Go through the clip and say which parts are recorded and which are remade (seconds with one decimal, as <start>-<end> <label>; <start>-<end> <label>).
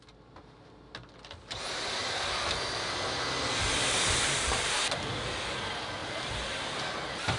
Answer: 0.0-7.4 recorded